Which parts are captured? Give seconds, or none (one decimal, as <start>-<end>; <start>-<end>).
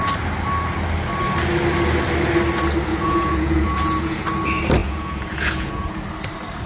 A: 0.0-2.9; 4.2-4.8; 6.0-6.7